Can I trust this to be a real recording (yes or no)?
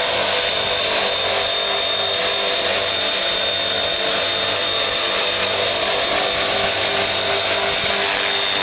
yes